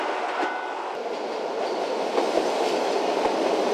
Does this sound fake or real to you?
real